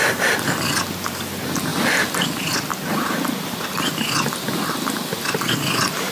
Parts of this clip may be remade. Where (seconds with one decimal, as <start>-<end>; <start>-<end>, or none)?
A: none